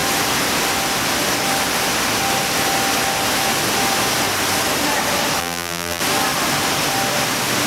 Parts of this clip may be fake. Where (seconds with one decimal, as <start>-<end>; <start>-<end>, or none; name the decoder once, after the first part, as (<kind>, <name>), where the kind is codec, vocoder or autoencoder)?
5.4-6.0 (vocoder, BigVGAN v2)